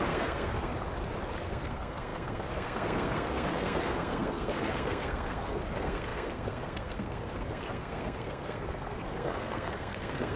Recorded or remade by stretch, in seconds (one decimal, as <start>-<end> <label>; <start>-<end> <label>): 0.0-0.7 remade; 0.7-1.4 recorded; 1.4-10.4 remade